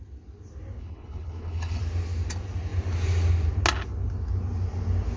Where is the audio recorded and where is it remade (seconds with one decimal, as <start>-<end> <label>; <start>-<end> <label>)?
0.0-0.8 recorded; 0.8-1.8 remade; 1.8-5.2 recorded